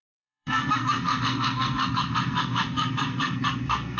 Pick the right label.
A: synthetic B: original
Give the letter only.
A